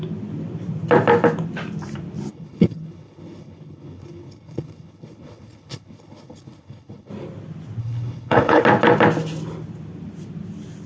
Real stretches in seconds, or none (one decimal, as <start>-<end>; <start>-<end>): 0.0-2.3; 7.1-7.8; 8.6-10.9